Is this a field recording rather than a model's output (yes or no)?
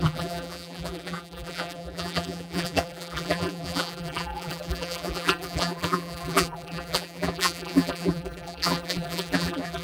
no